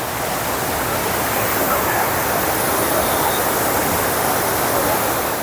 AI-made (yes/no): no